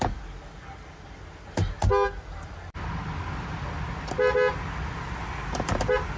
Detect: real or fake real